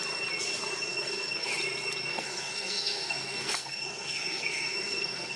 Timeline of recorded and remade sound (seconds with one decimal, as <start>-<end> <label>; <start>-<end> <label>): 0.0-0.9 recorded; 0.9-1.5 remade; 1.5-2.1 recorded; 2.1-5.4 remade

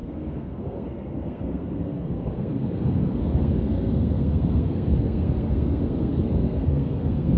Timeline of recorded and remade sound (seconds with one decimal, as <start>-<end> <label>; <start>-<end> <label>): 0.0-7.4 remade

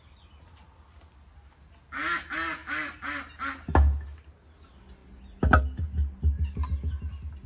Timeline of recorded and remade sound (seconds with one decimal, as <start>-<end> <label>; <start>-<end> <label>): 0.0-7.5 recorded

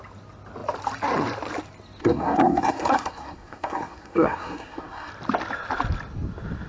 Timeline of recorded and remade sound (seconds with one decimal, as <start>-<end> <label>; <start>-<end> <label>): 0.0-2.0 recorded; 2.0-5.1 remade; 5.1-6.7 recorded

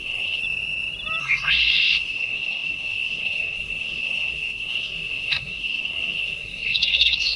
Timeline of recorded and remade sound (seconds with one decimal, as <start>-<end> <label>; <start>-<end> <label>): 0.0-0.4 remade; 0.4-1.2 recorded; 1.2-7.4 remade

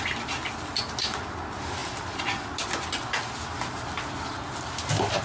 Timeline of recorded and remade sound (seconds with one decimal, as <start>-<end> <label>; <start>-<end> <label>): 0.0-5.2 recorded

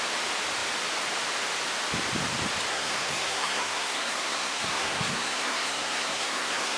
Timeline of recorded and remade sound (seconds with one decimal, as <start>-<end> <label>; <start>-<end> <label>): 0.0-2.7 recorded; 2.7-6.8 remade

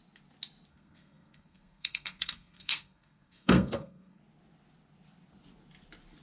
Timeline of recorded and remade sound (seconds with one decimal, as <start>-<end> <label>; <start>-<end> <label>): 0.0-0.7 recorded; 0.7-4.2 remade; 4.2-6.2 recorded